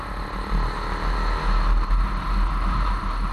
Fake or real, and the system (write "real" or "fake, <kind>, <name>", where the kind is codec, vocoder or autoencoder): real